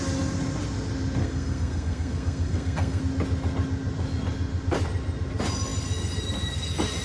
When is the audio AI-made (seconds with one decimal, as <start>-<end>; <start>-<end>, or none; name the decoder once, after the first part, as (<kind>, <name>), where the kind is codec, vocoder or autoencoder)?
1.2-3.0 (codec, SNAC)

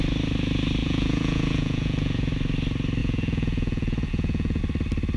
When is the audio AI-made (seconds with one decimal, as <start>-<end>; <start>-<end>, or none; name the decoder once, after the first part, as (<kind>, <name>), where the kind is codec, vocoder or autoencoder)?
0.8-2.3 (vocoder, Vocos); 3.0-4.6